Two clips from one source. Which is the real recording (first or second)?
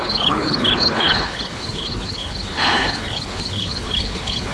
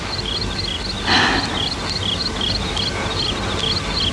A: second